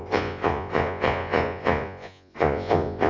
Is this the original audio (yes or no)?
no